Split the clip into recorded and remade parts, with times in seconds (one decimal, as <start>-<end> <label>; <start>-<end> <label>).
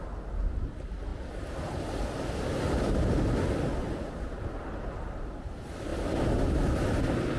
0.0-7.4 recorded